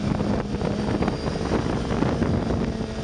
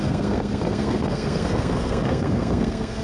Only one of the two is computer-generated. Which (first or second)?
second